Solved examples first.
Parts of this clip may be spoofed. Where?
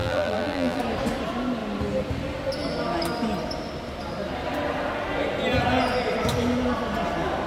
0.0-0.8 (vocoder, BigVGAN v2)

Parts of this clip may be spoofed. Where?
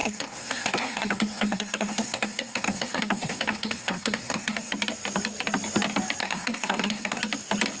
0.0-4.7 (codec, SNAC); 6.2-7.2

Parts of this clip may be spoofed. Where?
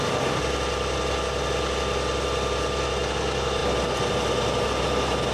none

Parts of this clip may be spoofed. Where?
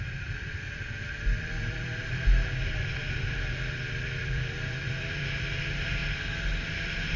0.0-6.0 (vocoder, BigVGAN v2); 6.7-7.2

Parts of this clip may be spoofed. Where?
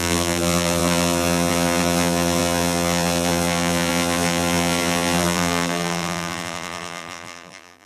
0.0-7.9 (vocoder, BigVGAN v2)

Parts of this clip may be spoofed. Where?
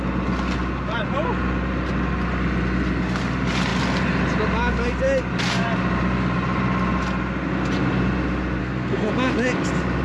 8.6-9.1 (codec, SNAC)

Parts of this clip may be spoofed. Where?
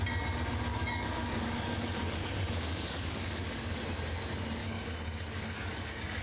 0.7-3.7 (codec, DAC); 4.6-6.2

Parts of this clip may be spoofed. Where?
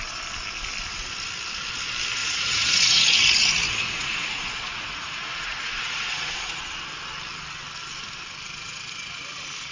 2.2-6.6 (vocoder, Vocos)